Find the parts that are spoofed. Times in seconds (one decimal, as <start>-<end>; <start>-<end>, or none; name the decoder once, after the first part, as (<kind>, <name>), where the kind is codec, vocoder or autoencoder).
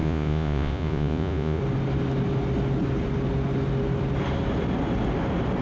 0.0-1.6 (vocoder, Vocos)